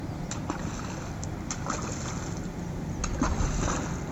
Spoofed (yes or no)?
no